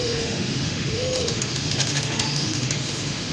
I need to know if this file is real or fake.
fake